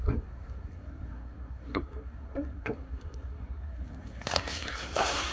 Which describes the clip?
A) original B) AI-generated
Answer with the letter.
B